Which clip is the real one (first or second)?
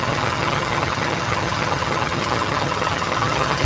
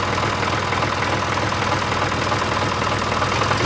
second